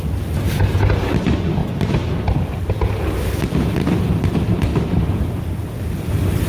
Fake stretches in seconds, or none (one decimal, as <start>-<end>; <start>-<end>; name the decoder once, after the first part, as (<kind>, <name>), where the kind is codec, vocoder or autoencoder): 1.6-2.7 (vocoder, BigVGAN v2); 4.7-5.6